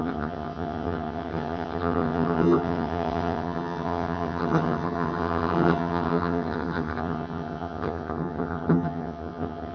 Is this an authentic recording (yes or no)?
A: no